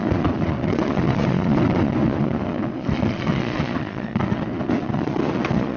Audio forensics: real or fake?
fake